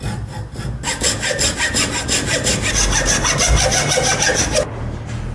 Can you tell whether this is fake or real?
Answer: real